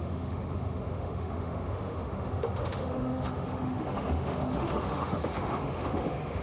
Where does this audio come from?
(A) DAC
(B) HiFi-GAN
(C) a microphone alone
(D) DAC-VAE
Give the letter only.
D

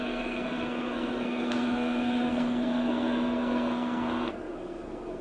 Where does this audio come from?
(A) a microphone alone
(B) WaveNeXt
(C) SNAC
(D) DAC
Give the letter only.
C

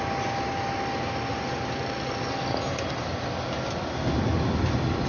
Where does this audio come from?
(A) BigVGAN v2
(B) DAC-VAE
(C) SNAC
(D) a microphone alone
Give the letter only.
D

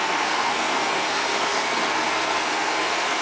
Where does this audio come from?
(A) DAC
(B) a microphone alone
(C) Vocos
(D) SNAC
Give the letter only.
D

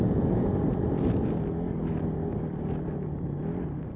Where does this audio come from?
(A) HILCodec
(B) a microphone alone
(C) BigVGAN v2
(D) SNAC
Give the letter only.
B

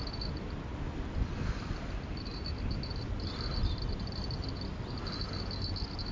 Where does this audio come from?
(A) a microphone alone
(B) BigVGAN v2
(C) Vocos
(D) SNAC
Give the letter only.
A